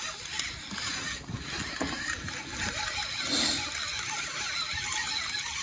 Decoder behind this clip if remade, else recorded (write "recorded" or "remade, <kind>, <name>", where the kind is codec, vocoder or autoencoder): recorded